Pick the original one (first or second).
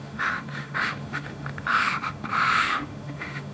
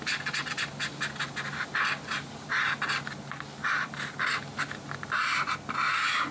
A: second